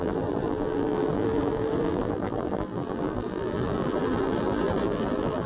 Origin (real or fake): fake